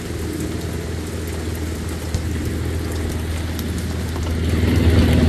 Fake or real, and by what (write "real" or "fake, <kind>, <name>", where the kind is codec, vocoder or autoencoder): real